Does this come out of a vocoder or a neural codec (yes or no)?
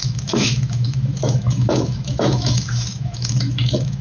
yes